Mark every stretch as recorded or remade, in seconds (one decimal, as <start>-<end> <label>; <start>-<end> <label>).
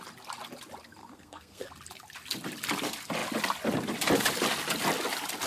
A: 0.0-1.0 recorded; 1.0-1.7 remade; 1.7-5.5 recorded